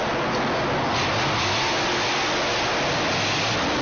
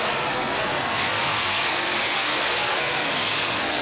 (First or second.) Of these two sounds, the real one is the first